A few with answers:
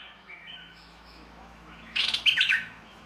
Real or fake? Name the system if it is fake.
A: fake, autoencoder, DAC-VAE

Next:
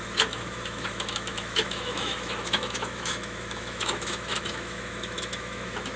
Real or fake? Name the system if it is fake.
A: fake, autoencoder, DAC-VAE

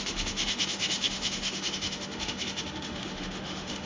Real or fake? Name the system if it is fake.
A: fake, autoencoder, DAC-VAE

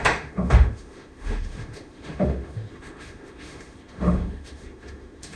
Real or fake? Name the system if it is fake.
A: fake, autoencoder, DAC-VAE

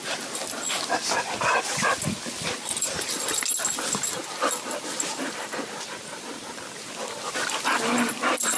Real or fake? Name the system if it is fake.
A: real